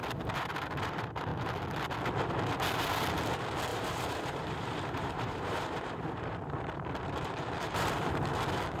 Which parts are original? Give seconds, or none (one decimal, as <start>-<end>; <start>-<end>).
0.0-3.7; 8.1-8.8